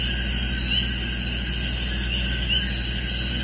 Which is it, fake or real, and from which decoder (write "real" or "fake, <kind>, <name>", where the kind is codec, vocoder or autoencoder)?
real